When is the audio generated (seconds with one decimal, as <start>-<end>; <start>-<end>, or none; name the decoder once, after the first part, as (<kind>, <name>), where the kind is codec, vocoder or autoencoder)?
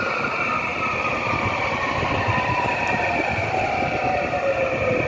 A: none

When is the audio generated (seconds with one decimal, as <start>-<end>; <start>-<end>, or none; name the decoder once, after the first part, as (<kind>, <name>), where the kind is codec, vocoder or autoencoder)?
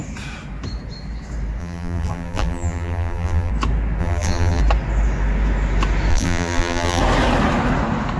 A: 1.6-3.5 (vocoder, BigVGAN v2); 4.0-4.6; 6.1-7.0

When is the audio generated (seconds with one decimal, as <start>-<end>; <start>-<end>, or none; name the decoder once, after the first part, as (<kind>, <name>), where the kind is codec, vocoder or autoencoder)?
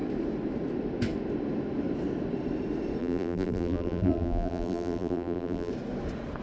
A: 3.0-5.7 (vocoder, BigVGAN v2)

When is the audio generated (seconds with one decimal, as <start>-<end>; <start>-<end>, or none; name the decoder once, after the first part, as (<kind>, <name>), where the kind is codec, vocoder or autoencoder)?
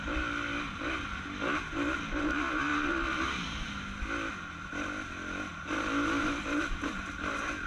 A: 2.7-3.7 (vocoder, BigVGAN v2); 5.5-6.9